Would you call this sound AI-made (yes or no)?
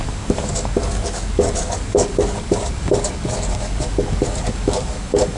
yes